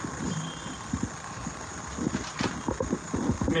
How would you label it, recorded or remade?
recorded